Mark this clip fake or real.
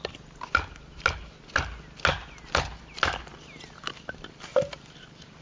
real